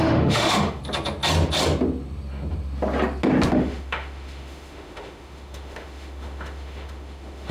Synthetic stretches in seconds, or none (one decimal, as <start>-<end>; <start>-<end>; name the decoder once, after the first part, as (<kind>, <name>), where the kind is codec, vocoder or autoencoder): 0.0-0.8 (autoencoder, DAC-VAE); 3.5-7.5

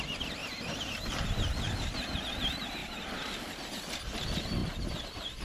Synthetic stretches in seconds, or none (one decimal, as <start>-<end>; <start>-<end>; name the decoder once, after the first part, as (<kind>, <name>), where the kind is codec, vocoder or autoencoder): 2.8-4.0 (vocoder, BigVGAN v2)

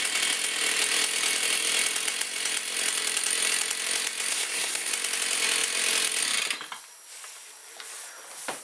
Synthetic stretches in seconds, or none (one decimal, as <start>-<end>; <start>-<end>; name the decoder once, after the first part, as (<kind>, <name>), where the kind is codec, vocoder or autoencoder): 4.3-4.9 (codec, SNAC)

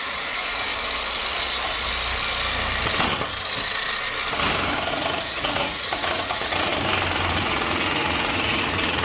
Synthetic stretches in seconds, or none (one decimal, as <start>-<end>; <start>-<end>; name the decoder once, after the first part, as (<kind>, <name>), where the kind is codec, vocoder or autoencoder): 0.0-0.7 (vocoder, Vocos); 4.9-6.7; 7.3-9.0

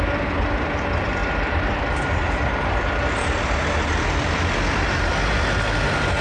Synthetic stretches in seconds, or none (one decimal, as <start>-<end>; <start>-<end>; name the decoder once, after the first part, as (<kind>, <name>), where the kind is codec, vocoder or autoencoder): 1.2-4.9 (vocoder, BigVGAN v2)

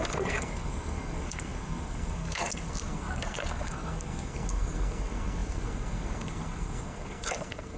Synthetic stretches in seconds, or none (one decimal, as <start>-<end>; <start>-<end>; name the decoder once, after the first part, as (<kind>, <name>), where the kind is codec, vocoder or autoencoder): 0.0-7.8 (codec, SNAC)